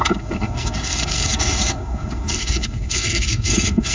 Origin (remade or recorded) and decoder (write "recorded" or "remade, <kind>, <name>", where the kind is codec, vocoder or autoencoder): remade, codec, SNAC